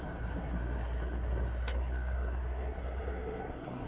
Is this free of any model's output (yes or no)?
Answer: no